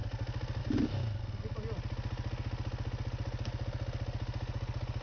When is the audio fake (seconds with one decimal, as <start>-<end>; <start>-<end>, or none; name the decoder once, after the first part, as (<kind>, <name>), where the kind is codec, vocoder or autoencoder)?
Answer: none